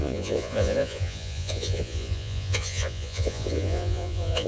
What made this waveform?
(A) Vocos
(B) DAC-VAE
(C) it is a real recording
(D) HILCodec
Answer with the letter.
A